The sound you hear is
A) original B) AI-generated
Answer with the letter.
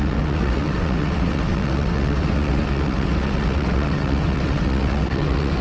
B